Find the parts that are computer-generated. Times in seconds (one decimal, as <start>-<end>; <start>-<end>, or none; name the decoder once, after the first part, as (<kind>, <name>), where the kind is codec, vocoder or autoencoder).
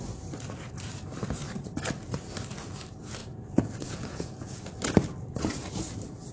3.2-4.7 (vocoder, Vocos)